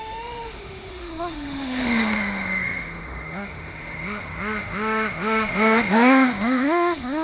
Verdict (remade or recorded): remade